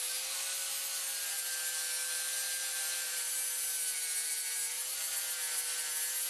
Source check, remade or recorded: recorded